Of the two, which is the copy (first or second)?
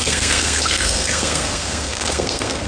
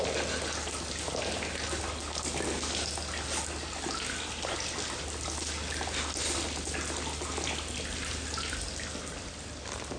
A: first